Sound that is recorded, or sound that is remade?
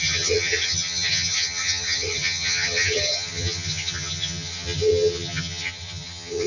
remade